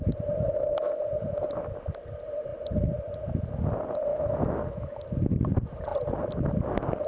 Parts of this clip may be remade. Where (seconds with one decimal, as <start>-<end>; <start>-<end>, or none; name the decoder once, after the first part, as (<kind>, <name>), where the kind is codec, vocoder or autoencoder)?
4.1-5.0 (autoencoder, DAC-VAE)